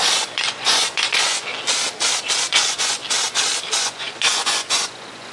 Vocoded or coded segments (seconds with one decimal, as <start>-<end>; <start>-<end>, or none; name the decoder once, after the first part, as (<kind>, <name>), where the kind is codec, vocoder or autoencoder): 0.0-1.5 (vocoder, Vocos); 2.5-3.0; 3.8-5.3